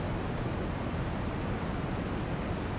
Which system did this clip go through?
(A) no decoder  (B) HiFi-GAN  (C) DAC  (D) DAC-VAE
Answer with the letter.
A